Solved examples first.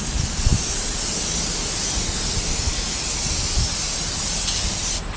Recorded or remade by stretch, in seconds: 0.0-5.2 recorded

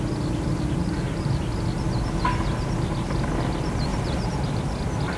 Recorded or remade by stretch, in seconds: 0.0-0.8 recorded; 0.8-1.4 remade; 1.4-3.9 recorded; 3.9-4.6 remade; 4.6-5.2 recorded

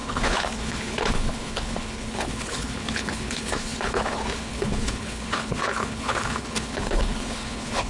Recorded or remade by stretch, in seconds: 0.0-7.9 remade

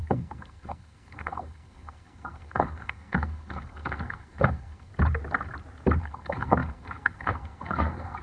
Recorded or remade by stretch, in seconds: 0.0-4.9 remade; 4.9-6.0 recorded; 6.0-8.2 remade